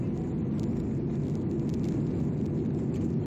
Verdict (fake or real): real